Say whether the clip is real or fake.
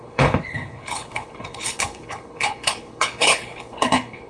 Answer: fake